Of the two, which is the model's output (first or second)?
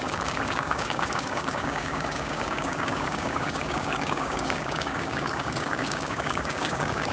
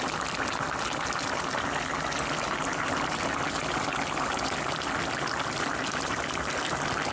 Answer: first